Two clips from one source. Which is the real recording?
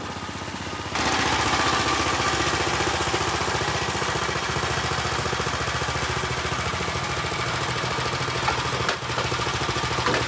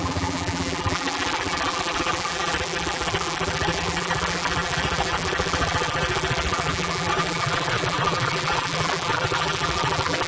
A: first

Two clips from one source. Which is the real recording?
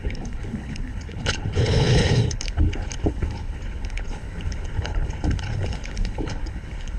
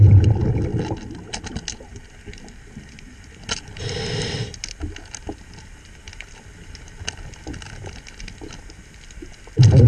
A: second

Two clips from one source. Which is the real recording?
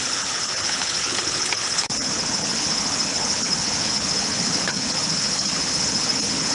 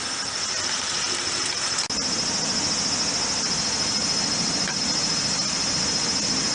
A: second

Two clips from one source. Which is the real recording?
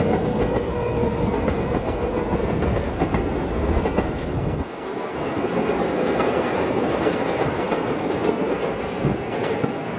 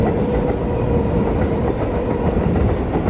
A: second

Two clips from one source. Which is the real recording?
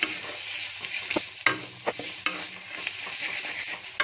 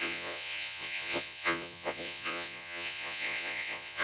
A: first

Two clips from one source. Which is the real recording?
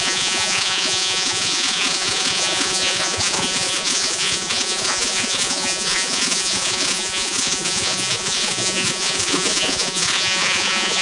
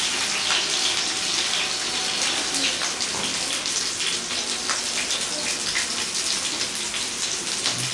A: second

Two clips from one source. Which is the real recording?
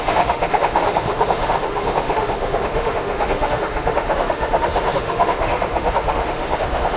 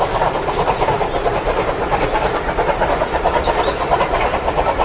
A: second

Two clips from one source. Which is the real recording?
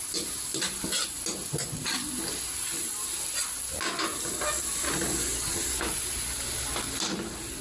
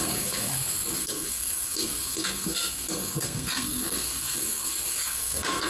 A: first